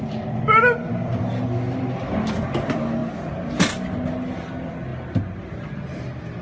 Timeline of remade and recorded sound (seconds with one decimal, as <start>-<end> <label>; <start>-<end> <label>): 0.0-6.4 recorded